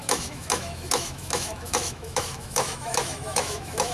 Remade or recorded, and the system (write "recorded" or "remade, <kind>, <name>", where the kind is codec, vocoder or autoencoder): remade, autoencoder, DAC-VAE